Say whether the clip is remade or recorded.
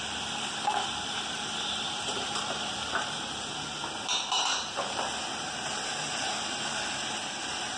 remade